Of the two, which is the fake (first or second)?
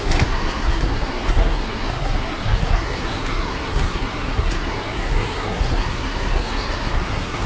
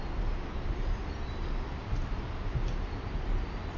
first